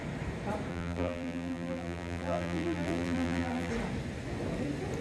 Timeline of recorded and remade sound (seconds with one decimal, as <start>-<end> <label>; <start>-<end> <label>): 0.0-0.7 recorded; 0.7-3.7 remade; 3.7-5.0 recorded